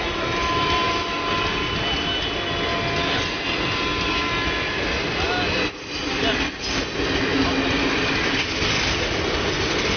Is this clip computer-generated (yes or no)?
no